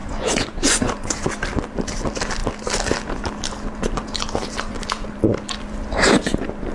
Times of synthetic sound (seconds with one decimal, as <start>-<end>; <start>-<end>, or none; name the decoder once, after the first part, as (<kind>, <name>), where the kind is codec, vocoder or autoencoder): 0.0-1.3 (vocoder, Vocos)